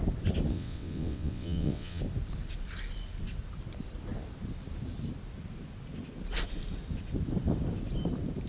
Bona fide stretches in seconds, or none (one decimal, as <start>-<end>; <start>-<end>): 0.0-0.5; 2.0-8.5